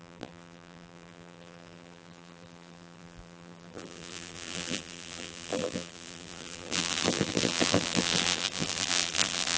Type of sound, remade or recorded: remade